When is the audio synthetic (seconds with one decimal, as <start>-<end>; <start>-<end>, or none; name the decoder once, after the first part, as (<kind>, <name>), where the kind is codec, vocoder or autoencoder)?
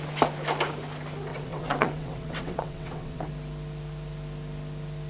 1.3-3.3 (vocoder, WaveNeXt)